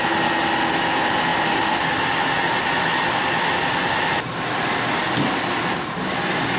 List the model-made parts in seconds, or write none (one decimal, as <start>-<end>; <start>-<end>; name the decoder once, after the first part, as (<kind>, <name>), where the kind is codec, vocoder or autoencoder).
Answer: none